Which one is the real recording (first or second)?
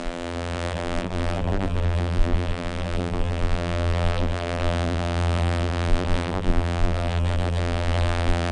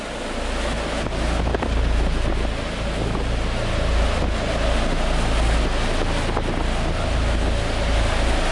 second